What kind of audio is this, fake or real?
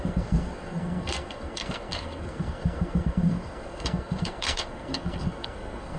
fake